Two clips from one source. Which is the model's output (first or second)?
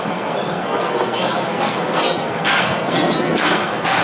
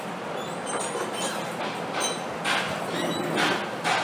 first